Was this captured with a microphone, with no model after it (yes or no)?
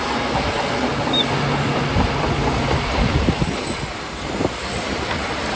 yes